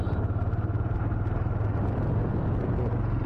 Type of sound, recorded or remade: recorded